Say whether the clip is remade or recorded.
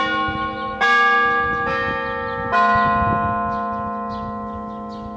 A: recorded